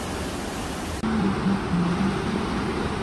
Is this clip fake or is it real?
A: real